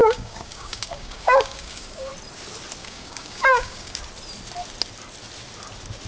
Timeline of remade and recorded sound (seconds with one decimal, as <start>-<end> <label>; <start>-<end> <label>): 0.0-2.1 remade; 2.1-2.8 recorded; 2.8-4.0 remade; 4.0-6.1 recorded